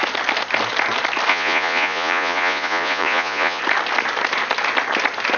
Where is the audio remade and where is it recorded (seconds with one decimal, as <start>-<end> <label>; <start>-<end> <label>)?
0.0-1.3 recorded; 1.3-3.6 remade; 3.6-5.4 recorded